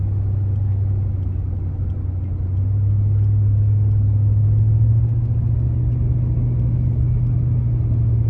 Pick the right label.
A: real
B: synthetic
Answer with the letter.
A